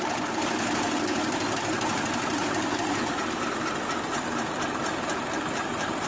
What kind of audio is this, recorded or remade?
remade